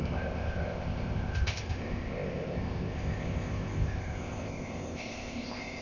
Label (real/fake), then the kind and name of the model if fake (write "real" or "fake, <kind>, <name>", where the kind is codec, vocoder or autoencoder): fake, codec, ZipCodec